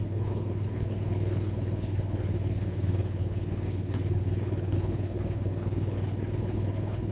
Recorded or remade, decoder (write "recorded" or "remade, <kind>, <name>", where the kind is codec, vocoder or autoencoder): remade, codec, HILCodec